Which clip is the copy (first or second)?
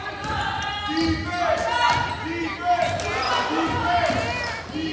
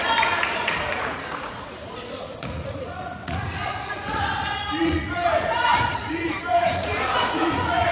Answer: second